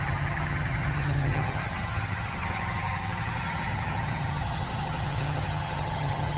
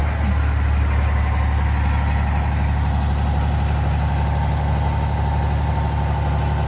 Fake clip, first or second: first